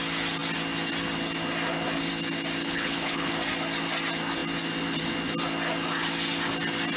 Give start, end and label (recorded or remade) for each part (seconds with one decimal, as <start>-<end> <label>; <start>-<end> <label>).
0.0-2.6 recorded; 2.6-3.3 remade; 3.3-7.0 recorded